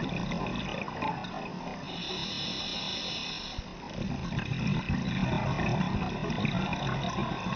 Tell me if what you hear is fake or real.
real